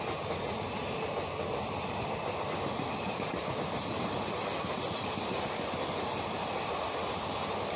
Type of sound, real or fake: real